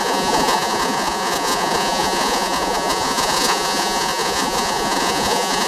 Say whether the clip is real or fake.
fake